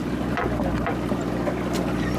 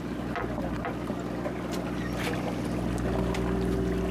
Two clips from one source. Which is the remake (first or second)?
first